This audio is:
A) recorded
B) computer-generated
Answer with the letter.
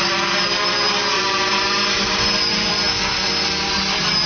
A